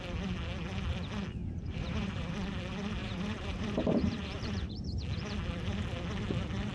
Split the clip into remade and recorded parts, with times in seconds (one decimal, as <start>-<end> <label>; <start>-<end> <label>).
0.0-1.4 recorded; 1.4-2.3 remade; 2.3-3.0 recorded; 3.0-5.0 remade; 5.0-6.7 recorded